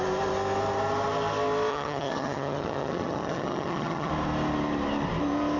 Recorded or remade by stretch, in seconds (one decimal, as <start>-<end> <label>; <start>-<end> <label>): 0.0-1.7 recorded; 1.7-4.1 remade; 4.1-5.6 recorded